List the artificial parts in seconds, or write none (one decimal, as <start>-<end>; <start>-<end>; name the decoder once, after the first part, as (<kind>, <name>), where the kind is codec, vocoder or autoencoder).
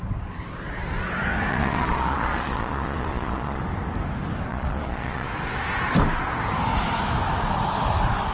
1.5-3.6 (vocoder, Vocos); 4.5-5.3